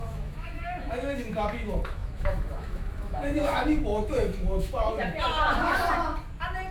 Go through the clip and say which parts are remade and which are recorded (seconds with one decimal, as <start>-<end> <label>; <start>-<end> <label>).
0.0-5.8 remade; 5.8-6.7 recorded